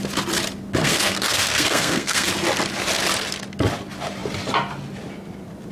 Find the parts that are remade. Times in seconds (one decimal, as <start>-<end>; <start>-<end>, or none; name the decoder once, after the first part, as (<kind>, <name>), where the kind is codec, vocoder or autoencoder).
0.8-2.3 (codec, SNAC)